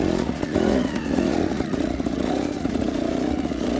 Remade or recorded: remade